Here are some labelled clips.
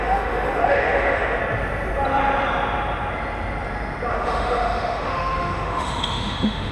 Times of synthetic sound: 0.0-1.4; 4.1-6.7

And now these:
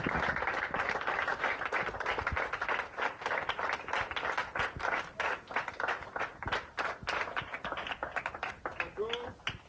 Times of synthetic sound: none

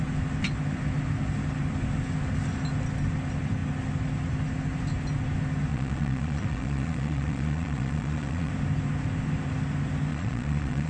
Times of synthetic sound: 5.7-8.5; 10.1-10.9